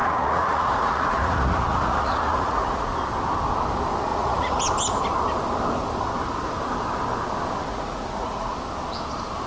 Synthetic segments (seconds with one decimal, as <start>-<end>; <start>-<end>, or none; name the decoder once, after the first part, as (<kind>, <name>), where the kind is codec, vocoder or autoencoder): 0.0-2.9 (vocoder, Vocos); 4.1-4.6; 7.7-8.5

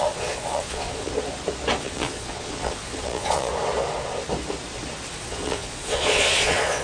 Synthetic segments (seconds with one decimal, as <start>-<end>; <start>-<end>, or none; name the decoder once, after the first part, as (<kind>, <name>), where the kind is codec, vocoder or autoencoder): 0.0-1.1 (vocoder, Vocos); 1.8-3.5; 5.1-6.8